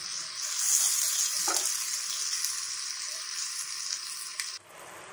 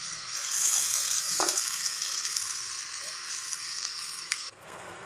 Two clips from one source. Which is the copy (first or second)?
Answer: second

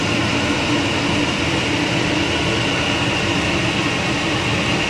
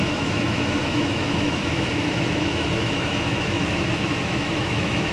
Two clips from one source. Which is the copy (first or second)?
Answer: second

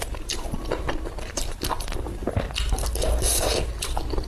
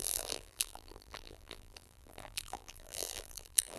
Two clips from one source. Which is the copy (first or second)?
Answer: second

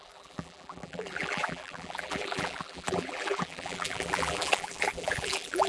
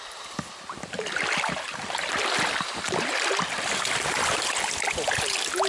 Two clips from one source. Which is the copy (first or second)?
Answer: first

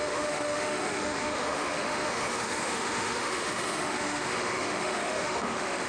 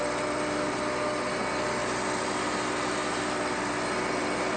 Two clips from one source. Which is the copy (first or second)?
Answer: first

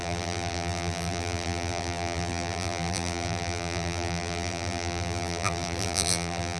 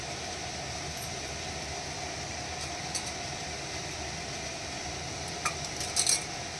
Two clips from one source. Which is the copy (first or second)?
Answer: first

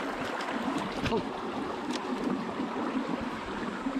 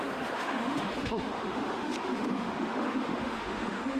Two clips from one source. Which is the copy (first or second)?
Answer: second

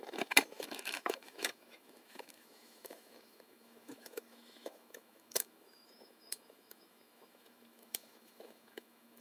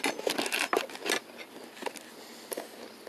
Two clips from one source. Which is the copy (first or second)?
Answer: first